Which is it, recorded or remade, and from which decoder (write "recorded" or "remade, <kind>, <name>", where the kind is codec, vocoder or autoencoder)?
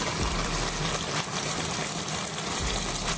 remade, vocoder, BigVGAN v2